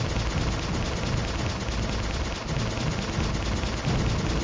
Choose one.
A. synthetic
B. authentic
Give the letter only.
B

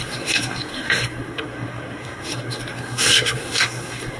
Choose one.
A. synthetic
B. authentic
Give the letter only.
A